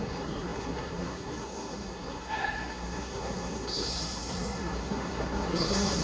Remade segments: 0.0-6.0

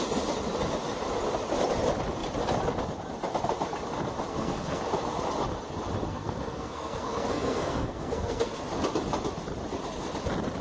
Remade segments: 4.3-4.8; 6.1-8.6